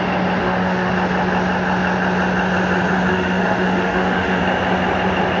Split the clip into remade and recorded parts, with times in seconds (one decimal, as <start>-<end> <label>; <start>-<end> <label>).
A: 0.0-0.4 recorded; 0.4-0.9 remade; 0.9-3.1 recorded; 3.1-4.4 remade; 4.4-5.4 recorded